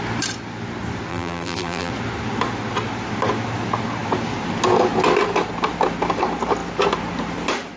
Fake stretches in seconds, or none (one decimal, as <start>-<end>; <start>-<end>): 1.1-1.9